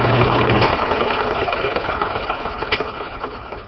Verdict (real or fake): fake